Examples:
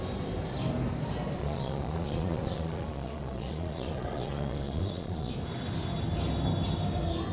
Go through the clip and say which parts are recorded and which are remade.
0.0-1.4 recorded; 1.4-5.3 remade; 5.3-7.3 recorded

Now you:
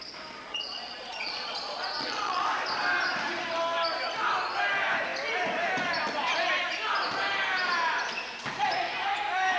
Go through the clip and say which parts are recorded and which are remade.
0.0-0.5 recorded; 0.5-2.4 remade; 2.4-9.6 recorded